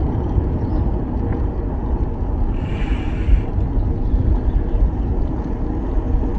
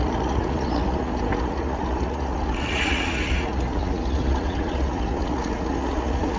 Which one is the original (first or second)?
first